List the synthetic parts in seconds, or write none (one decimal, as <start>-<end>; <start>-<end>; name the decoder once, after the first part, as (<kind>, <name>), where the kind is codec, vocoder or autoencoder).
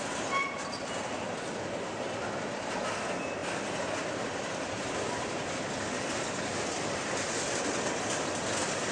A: none